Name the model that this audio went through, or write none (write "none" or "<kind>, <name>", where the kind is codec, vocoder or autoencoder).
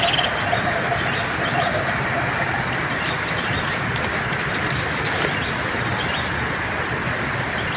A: none